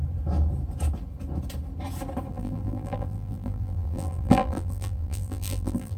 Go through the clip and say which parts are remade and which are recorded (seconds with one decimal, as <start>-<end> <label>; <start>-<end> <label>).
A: 0.0-2.3 recorded; 2.3-6.0 remade